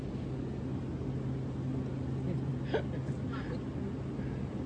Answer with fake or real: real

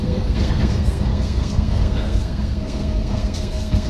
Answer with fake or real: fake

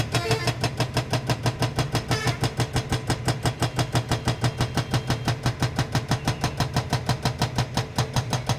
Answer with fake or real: real